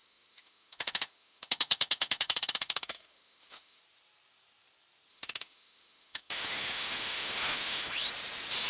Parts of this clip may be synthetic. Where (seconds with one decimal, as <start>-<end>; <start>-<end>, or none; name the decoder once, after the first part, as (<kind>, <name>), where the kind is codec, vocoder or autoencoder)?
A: 0.0-3.8 (autoencoder, DAC-VAE); 5.1-8.1

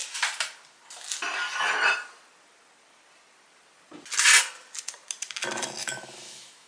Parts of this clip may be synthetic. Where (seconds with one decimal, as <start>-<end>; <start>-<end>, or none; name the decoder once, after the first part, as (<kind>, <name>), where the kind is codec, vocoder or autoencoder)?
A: 5.8-6.7 (autoencoder, DAC-VAE)

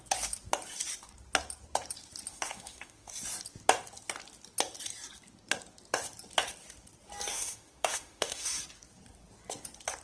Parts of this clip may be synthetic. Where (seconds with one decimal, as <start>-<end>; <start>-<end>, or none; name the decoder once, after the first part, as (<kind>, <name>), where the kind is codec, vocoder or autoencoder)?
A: 2.3-3.1 (autoencoder, DAC-VAE); 7.3-8.6

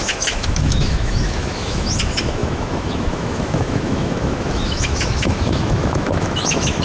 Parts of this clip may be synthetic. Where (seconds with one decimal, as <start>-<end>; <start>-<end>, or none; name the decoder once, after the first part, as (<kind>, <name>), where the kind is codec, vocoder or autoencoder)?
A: 0.0-6.8 (autoencoder, DAC-VAE)

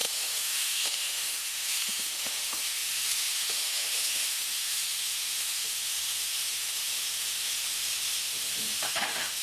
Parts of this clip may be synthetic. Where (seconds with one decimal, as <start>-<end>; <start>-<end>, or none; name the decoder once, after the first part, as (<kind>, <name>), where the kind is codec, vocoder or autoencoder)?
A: 0.0-9.4 (autoencoder, DAC-VAE)

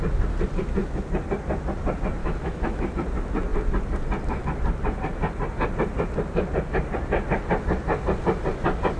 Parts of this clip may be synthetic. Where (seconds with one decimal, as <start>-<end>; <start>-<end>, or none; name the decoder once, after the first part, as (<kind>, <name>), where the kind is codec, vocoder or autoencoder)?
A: 2.2-2.9 (autoencoder, DAC-VAE)

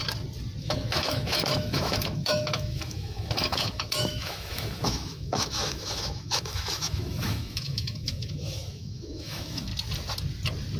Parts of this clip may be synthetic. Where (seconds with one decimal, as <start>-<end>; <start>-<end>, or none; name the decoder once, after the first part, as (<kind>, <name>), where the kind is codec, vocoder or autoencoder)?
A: 0.6-9.7 (autoencoder, DAC-VAE)

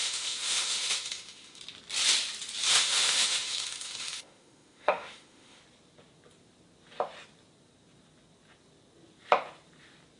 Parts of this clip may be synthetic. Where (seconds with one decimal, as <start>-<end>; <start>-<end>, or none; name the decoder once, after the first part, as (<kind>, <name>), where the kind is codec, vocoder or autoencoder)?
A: 0.0-1.6 (autoencoder, DAC-VAE); 2.7-5.6